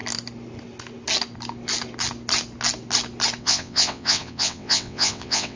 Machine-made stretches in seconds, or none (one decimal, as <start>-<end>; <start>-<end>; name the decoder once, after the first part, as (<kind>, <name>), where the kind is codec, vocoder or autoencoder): 3.4-5.6 (vocoder, WaveNeXt)